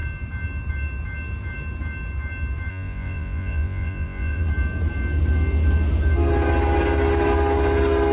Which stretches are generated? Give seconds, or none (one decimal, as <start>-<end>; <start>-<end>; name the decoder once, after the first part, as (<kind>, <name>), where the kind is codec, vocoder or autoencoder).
2.7-4.5 (vocoder, Vocos)